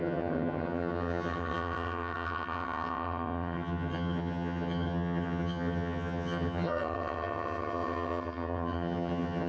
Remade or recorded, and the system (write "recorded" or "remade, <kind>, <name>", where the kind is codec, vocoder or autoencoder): remade, vocoder, HiFi-GAN